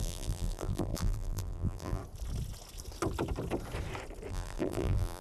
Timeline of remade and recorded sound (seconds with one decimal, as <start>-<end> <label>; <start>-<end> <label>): 0.0-2.0 remade; 2.0-4.3 recorded; 4.3-5.2 remade